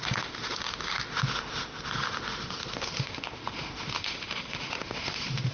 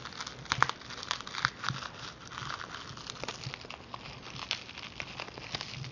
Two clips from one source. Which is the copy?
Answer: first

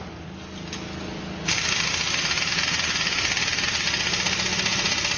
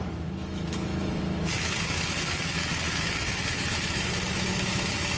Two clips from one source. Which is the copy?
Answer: second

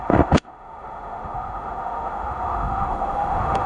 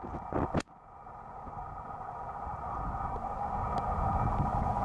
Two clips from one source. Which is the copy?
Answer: first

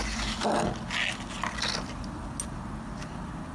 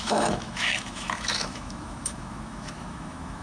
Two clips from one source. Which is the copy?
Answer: second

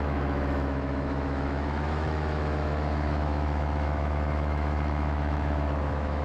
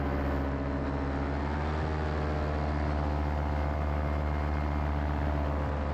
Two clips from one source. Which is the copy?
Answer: first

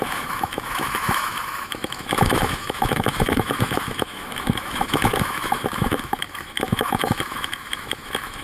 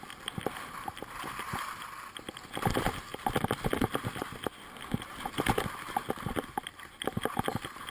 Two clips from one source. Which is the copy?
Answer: first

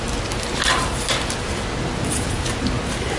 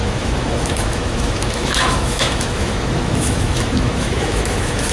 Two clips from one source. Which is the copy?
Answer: second